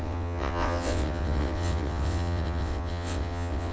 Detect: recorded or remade remade